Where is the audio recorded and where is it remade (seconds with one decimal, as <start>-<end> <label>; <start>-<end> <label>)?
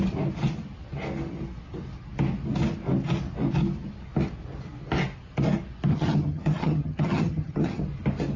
0.0-5.9 recorded; 5.9-7.8 remade; 7.8-8.4 recorded